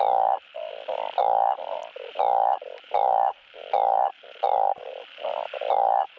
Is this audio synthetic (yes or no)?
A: no